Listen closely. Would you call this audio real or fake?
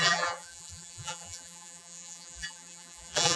fake